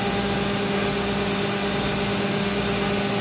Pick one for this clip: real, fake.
real